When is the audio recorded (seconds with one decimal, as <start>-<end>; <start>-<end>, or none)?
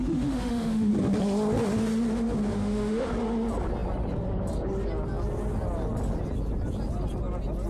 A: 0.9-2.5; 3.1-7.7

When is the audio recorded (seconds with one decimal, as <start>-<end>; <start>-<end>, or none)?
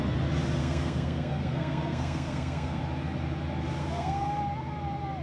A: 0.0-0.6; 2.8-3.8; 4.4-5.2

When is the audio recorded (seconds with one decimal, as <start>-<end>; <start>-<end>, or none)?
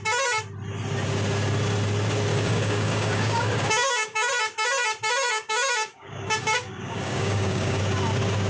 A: 0.0-2.3; 4.3-5.3; 7.8-8.5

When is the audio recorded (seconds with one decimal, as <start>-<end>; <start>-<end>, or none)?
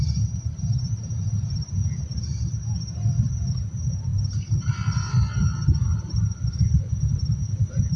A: 1.8-3.5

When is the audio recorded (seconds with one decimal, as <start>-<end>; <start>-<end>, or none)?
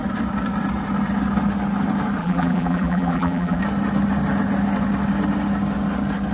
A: 0.0-2.2; 3.6-6.3